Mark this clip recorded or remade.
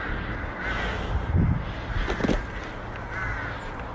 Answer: recorded